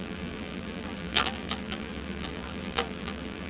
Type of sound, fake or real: fake